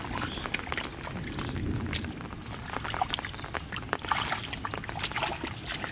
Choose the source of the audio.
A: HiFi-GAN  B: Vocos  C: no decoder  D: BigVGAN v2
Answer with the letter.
C